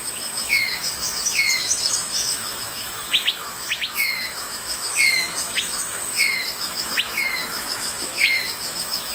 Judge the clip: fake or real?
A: fake